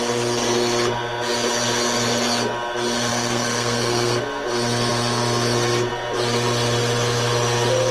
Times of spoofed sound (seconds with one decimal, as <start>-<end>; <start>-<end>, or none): 3.1-4.2